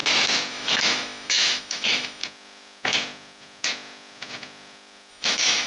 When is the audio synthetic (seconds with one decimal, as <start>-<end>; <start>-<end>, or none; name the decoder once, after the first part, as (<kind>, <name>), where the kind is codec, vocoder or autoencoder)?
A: 0.5-2.2 (autoencoder, DAC-VAE); 5.1-5.7